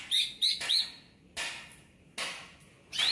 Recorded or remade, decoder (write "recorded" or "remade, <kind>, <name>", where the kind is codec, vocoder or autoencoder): recorded